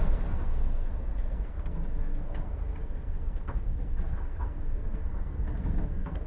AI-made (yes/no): yes